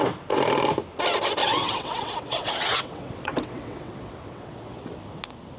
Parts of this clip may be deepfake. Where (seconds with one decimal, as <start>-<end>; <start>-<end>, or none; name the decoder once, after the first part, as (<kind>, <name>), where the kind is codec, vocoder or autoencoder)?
1.4-4.8 (vocoder, WaveNeXt)